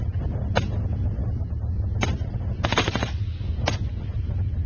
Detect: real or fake real